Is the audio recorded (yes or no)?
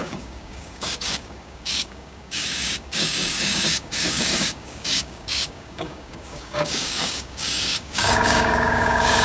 no